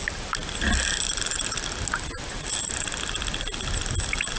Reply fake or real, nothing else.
real